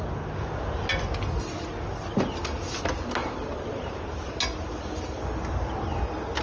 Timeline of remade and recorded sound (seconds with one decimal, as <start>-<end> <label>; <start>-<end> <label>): 0.0-6.4 recorded